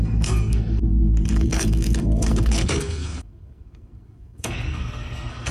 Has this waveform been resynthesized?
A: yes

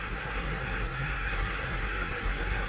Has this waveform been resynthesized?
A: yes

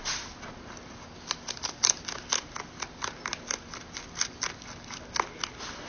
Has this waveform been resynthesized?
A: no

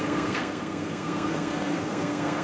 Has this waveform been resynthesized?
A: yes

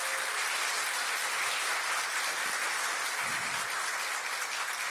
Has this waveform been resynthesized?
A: no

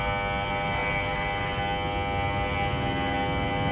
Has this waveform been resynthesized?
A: no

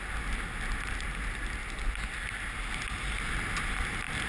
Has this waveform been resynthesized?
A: no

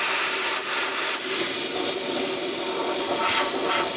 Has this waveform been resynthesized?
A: no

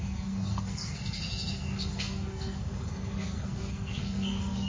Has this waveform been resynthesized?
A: yes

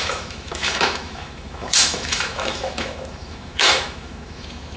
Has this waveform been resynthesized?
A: yes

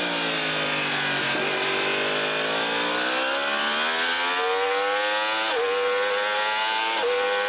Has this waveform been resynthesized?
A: no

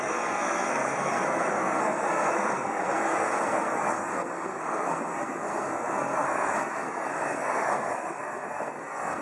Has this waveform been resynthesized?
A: yes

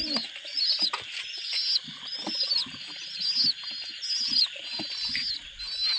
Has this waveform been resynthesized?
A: no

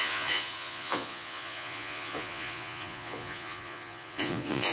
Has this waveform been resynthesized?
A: yes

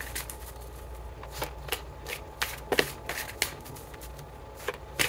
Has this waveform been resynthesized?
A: no